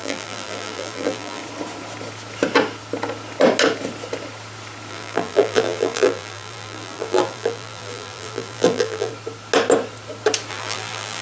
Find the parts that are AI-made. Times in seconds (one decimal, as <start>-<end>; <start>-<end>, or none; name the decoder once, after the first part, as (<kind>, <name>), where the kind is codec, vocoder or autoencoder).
0.0-1.4 (vocoder, BigVGAN v2); 4.9-9.1; 10.5-11.2